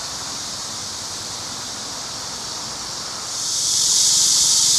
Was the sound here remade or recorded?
remade